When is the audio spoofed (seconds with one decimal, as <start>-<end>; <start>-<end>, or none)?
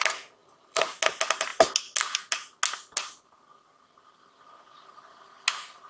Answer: 0.4-0.9